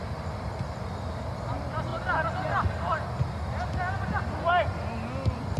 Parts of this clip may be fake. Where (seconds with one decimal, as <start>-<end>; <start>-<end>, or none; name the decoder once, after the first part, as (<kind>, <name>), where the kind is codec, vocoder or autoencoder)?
none